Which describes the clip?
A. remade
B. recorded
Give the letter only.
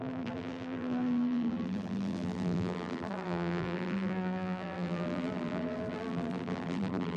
A